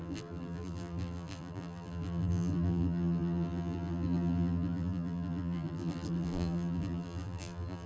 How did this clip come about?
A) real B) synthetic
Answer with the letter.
B